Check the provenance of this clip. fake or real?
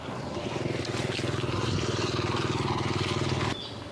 real